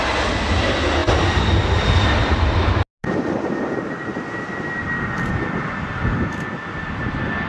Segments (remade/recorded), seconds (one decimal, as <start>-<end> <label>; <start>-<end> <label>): 0.0-7.5 recorded